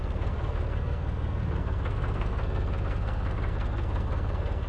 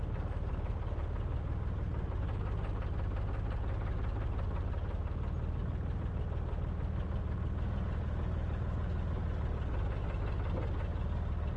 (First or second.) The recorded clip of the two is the second